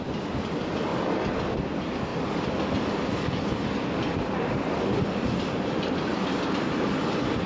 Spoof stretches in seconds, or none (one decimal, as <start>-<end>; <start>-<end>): 6.1-7.5